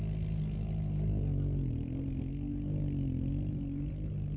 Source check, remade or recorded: recorded